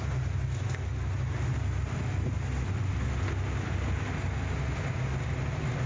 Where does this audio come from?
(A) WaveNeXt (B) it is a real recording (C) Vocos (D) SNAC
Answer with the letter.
B